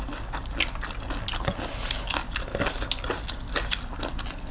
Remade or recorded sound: recorded